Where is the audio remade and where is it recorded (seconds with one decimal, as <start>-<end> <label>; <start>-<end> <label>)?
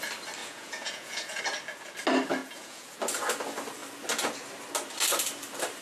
0.0-0.4 recorded; 0.4-1.4 remade; 1.4-2.4 recorded; 2.4-3.0 remade; 3.0-5.8 recorded